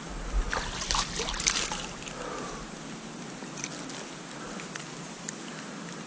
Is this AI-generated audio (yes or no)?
no